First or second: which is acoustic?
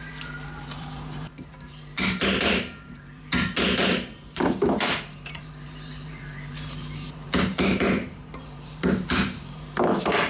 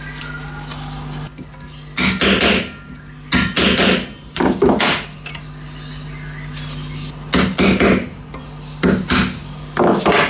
second